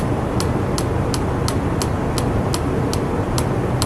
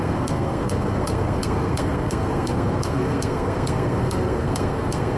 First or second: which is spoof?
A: second